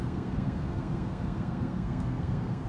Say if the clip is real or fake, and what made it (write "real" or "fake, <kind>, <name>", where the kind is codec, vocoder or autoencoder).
fake, codec, SNAC